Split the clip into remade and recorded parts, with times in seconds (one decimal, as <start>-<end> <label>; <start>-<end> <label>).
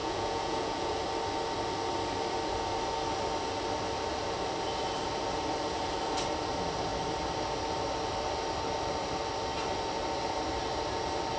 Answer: 0.0-1.0 remade; 1.0-11.4 recorded